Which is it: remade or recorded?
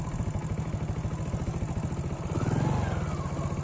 recorded